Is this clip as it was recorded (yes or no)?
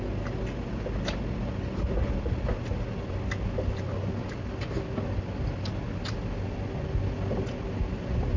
yes